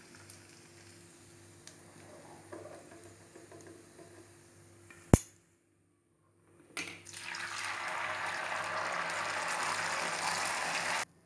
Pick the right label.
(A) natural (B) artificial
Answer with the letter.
A